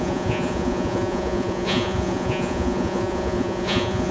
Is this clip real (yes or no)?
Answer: no